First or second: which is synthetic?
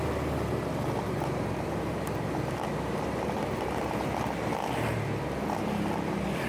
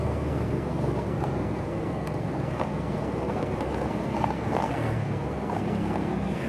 second